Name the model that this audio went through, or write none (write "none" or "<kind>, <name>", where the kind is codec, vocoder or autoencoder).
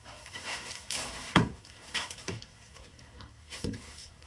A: codec, SNAC